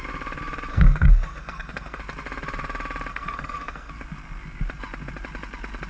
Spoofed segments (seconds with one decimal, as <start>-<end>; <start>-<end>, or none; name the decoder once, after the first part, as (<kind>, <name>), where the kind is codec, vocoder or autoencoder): 0.7-2.0 (codec, SNAC); 3.1-3.9